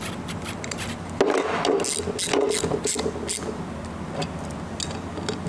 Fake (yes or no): no